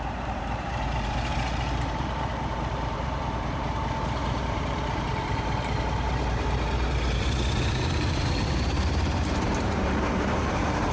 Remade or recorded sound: remade